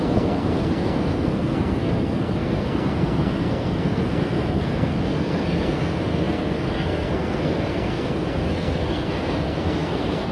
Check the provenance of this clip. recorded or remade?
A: remade